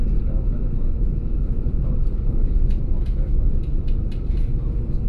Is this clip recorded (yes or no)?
yes